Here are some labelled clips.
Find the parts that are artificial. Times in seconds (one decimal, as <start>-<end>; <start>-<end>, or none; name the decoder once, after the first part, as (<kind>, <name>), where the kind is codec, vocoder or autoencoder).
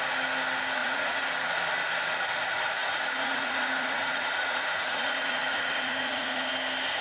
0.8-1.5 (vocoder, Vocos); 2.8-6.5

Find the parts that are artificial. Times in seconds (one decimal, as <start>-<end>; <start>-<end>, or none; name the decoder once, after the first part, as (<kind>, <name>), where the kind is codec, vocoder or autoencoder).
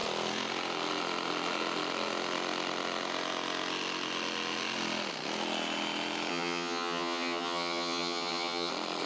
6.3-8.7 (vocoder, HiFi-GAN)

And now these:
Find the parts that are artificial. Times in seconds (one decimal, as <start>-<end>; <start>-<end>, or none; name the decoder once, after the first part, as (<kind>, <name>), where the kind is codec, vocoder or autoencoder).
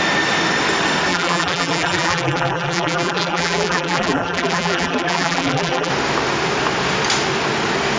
1.1-5.9 (vocoder, BigVGAN v2)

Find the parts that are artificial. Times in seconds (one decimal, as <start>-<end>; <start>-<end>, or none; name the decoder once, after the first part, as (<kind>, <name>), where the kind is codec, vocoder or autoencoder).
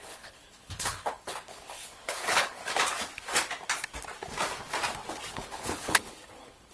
0.0-2.6 (codec, HILCodec); 5.3-6.7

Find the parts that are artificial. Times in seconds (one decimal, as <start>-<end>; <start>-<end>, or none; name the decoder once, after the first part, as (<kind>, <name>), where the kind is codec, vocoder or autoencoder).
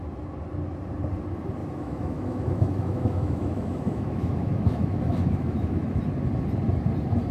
1.6-6.0 (autoencoder, DAC-VAE)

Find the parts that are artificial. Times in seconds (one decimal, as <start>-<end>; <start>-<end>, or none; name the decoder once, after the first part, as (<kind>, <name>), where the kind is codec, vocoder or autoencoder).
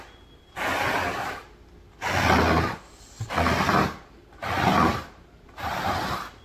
4.9-5.7 (vocoder, BigVGAN v2)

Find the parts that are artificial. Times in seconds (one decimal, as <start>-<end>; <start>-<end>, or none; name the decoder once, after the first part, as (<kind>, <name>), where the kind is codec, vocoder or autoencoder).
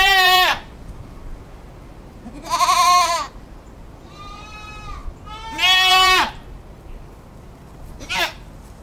0.0-5.0 (vocoder, BigVGAN v2); 5.9-8.8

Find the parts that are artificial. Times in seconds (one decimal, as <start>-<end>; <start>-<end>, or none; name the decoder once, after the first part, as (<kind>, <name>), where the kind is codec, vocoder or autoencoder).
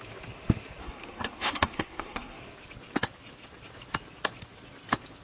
0.8-2.4 (codec, SNAC)